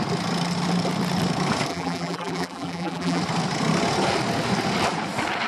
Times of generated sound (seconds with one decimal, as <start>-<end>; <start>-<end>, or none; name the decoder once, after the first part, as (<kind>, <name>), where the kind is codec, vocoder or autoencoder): 1.7-3.2 (vocoder, BigVGAN v2)